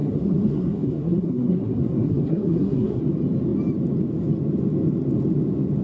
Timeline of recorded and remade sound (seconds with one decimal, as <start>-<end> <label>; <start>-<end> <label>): 0.0-3.0 remade; 3.0-5.8 recorded